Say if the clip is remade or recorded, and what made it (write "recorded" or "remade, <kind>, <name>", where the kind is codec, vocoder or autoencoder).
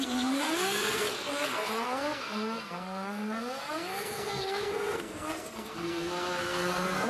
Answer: remade, codec, SNAC